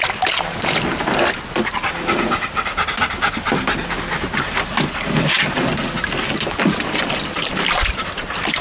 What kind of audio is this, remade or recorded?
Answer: recorded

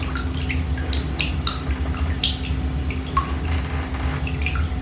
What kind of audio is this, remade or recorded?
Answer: recorded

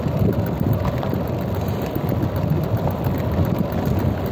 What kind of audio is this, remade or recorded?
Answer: recorded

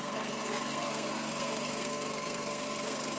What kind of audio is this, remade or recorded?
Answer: remade